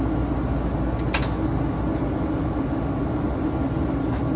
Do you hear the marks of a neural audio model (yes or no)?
no